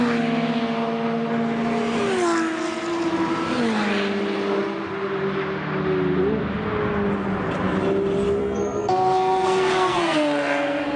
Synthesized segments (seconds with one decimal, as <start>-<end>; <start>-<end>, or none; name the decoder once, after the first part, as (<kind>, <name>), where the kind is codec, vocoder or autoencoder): 8.4-11.0 (codec, SNAC)